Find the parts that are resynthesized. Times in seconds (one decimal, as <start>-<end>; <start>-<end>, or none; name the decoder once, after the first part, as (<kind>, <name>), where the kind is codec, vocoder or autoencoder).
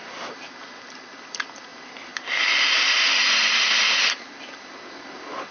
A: none